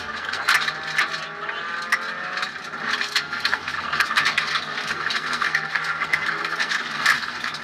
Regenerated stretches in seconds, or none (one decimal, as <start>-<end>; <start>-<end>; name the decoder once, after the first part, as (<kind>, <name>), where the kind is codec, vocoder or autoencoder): 0.0-0.5 (codec, SNAC); 3.0-7.6